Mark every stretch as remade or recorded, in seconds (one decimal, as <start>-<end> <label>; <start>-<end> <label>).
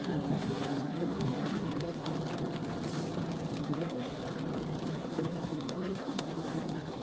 0.0-2.1 remade; 2.1-3.6 recorded; 3.6-4.2 remade; 4.2-4.9 recorded; 4.9-7.0 remade